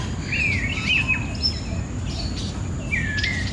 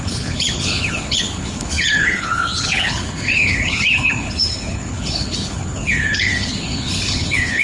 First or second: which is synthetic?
second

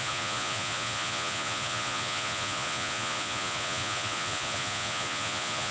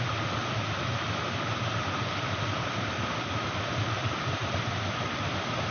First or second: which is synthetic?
first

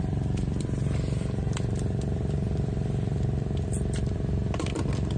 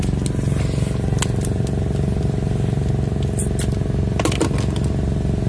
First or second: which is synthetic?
first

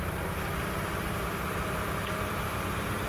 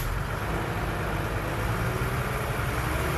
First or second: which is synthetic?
first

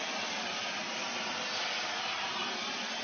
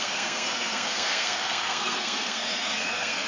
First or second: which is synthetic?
second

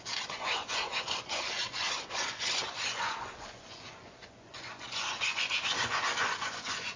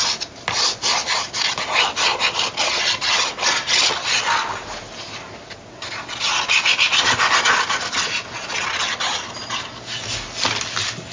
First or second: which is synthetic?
first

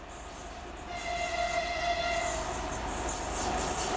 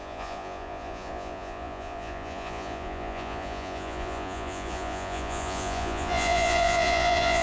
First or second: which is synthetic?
second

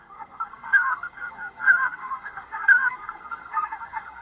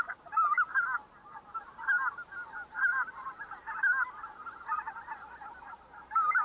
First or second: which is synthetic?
first